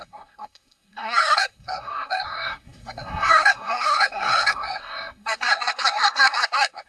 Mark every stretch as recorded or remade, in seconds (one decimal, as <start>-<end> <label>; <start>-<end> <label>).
0.0-6.9 remade